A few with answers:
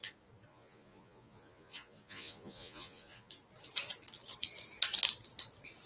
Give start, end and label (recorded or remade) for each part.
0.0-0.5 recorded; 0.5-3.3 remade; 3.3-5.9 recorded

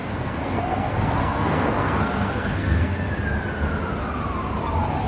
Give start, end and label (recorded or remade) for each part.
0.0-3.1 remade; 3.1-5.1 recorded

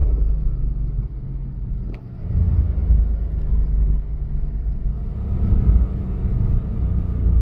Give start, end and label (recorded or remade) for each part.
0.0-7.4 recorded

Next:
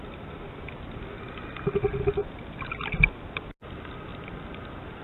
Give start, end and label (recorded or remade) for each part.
0.0-5.0 recorded